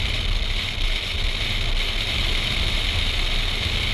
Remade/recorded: recorded